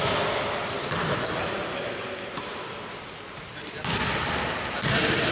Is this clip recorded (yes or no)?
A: yes